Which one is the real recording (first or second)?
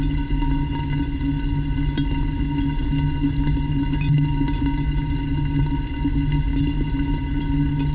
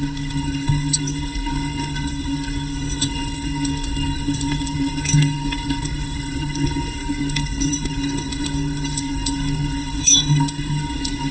first